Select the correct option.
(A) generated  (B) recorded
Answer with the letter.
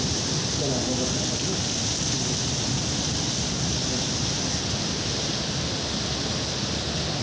B